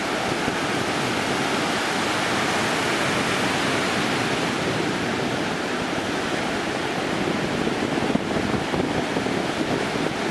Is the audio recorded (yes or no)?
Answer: yes